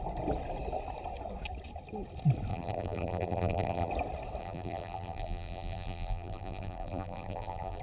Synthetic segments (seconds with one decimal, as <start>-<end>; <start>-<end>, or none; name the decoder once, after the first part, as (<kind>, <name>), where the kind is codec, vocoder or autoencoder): 2.5-3.9 (vocoder, BigVGAN v2); 4.4-7.8